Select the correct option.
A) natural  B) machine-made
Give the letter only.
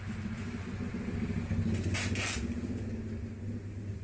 A